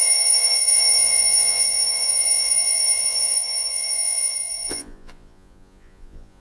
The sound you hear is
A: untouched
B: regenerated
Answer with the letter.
B